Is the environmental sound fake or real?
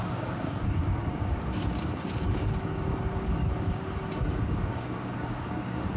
fake